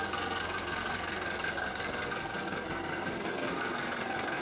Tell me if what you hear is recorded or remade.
remade